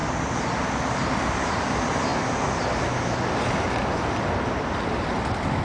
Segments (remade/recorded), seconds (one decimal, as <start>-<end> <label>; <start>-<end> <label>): 0.0-5.6 recorded